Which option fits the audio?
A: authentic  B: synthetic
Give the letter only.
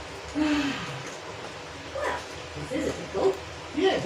A